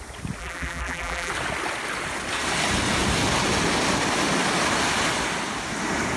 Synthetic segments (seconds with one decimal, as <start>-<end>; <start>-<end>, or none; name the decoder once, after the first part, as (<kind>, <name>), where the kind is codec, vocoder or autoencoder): 0.4-1.3 (vocoder, BigVGAN v2)

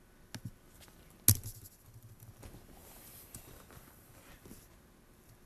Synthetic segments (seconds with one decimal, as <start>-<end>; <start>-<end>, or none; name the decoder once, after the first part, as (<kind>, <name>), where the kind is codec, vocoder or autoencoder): 1.5-2.3 (vocoder, BigVGAN v2); 2.8-4.3

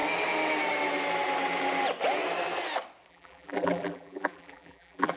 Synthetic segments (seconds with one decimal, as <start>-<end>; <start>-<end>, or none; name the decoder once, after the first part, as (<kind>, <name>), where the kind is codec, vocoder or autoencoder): 3.1-5.2 (vocoder, BigVGAN v2)

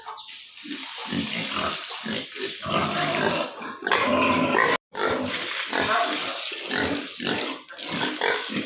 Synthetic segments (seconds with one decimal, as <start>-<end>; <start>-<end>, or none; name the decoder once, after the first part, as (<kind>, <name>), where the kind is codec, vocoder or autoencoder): none

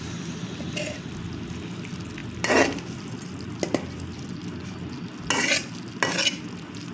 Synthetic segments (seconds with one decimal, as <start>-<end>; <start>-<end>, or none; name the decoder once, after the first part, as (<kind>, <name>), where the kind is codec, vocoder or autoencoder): none